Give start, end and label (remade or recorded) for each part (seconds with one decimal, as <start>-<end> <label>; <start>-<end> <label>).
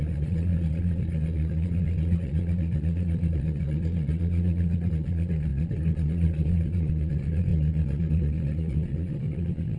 0.0-9.8 remade